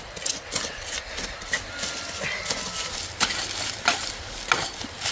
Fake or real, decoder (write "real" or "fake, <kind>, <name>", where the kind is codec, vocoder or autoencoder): real